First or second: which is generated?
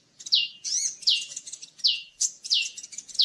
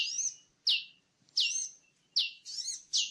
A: first